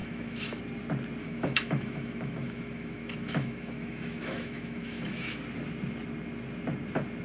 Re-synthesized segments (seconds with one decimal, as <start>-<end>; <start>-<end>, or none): 0.0-0.6; 1.2-5.4